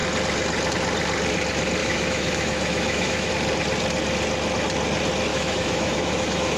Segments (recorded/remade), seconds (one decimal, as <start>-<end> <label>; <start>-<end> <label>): 0.0-1.8 recorded; 1.8-3.3 remade; 3.3-5.3 recorded; 5.3-6.6 remade